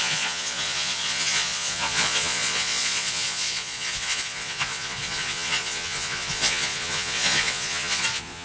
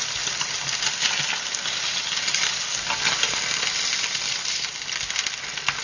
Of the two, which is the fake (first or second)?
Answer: first